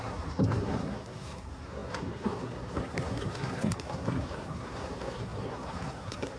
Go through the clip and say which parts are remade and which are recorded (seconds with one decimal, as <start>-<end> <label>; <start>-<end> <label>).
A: 0.0-6.4 remade